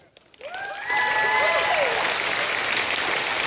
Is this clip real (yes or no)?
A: yes